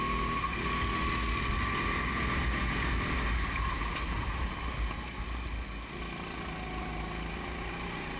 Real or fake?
real